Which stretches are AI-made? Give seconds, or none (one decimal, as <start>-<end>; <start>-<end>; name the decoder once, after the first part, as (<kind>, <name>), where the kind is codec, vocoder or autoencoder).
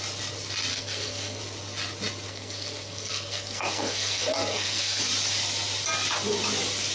0.7-1.4 (codec, SNAC); 2.3-5.0